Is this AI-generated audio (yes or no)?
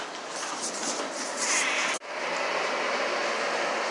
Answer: no